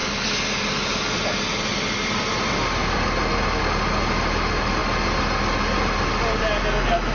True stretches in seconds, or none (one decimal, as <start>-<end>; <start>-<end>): 0.0-7.1